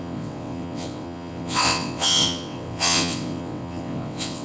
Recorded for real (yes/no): no